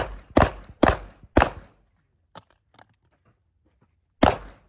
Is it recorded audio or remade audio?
recorded